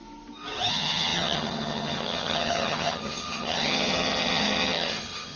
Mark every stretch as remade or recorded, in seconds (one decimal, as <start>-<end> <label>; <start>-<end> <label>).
0.0-0.7 recorded; 0.7-5.4 remade